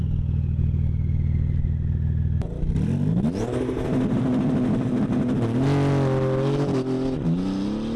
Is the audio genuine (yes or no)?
yes